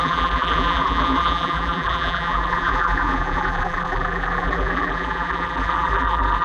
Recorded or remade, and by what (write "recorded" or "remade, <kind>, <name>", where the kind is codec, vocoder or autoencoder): remade, vocoder, BigVGAN v2